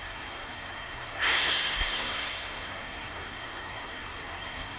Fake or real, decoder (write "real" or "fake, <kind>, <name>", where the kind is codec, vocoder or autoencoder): fake, codec, SNAC